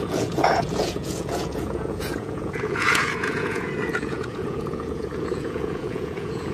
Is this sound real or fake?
fake